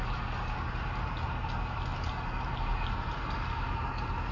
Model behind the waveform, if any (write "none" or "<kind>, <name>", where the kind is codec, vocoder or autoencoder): none